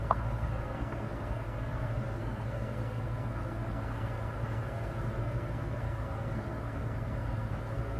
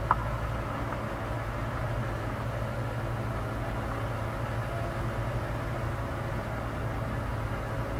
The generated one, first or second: first